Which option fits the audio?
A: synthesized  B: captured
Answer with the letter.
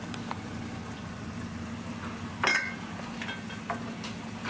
B